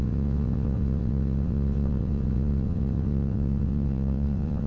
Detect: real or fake fake